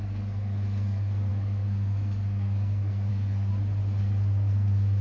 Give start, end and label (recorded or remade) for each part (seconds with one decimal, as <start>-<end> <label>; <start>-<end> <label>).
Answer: 0.0-3.5 remade; 3.5-4.0 recorded; 4.0-5.0 remade